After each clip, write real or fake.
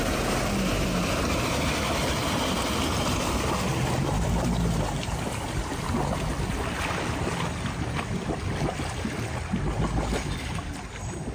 real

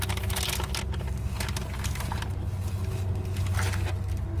real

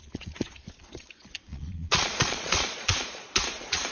fake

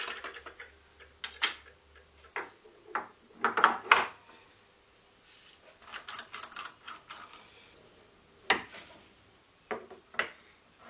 real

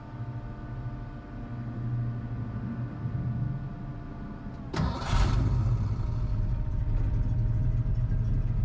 real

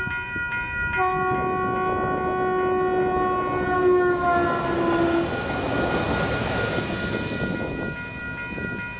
real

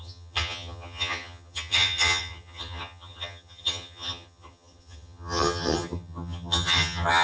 fake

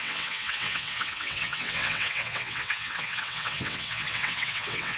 fake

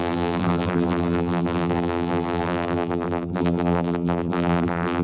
fake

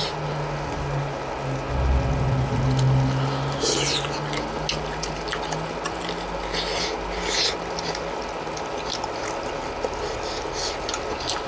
real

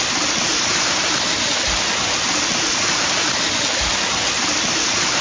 real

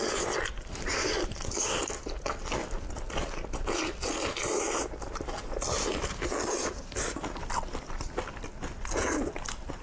fake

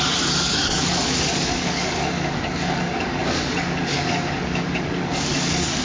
fake